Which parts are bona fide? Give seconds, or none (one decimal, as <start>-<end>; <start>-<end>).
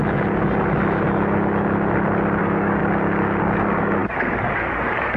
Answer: 0.0-2.4; 2.8-3.4